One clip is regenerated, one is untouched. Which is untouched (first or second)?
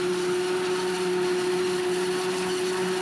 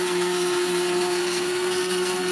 first